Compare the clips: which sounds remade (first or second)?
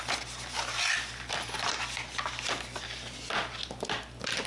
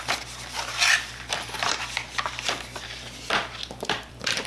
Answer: second